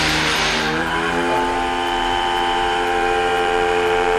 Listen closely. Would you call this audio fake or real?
fake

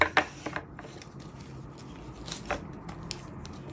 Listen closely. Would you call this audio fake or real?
real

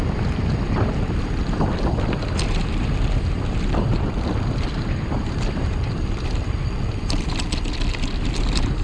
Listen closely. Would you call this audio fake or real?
fake